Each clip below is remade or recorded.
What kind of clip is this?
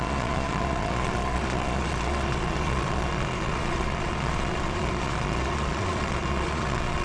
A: remade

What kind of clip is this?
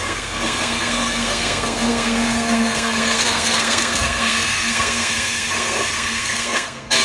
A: remade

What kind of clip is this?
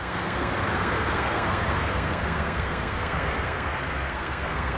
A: remade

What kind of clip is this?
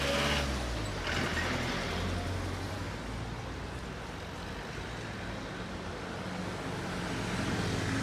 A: recorded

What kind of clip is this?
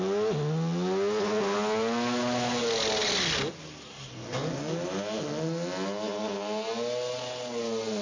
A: recorded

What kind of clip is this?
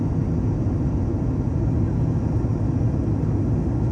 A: recorded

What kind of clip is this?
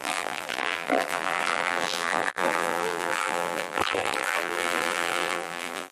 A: remade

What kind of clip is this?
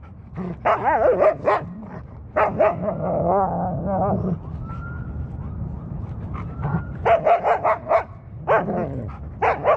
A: recorded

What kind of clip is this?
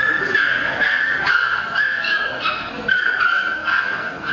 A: remade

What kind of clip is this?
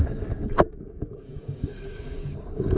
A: remade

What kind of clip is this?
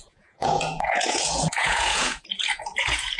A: remade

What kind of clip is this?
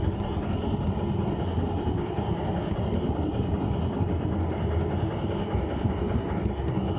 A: recorded